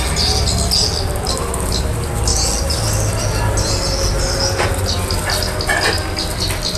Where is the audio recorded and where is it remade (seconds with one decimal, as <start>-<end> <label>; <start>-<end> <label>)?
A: 0.0-6.8 recorded